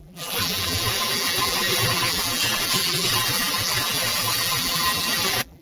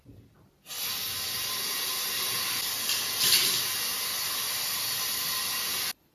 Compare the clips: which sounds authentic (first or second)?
second